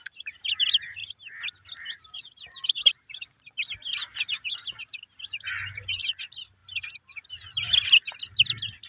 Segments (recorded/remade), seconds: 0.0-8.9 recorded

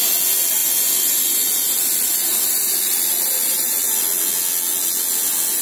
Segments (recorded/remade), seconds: 0.0-0.6 recorded; 0.6-4.0 remade; 4.0-5.6 recorded

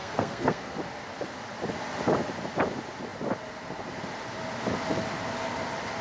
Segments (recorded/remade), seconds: 0.0-0.8 remade; 0.8-6.0 recorded

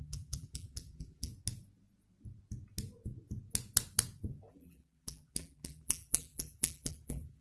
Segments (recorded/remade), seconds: 0.0-1.3 remade; 1.3-4.5 recorded; 4.5-7.4 remade

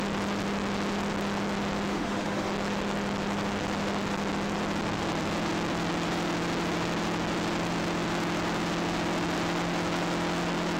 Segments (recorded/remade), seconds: 0.0-1.9 recorded; 1.9-2.5 remade; 2.5-10.8 recorded